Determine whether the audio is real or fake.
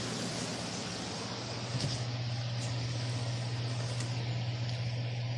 real